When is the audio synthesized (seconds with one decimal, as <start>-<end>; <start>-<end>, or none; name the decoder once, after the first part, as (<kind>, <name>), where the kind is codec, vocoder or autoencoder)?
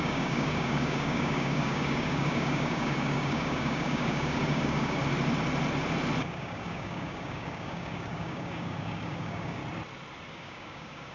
0.0-5.0 (codec, DAC); 6.2-9.6; 10.3-11.1